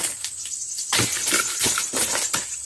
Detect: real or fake fake